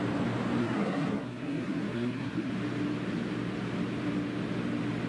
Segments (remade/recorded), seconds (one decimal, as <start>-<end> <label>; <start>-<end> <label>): 0.0-0.6 recorded; 0.6-2.5 remade; 2.5-5.1 recorded